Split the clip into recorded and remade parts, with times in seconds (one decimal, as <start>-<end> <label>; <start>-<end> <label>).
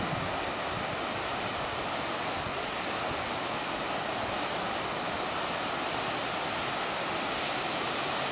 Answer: 0.0-8.3 recorded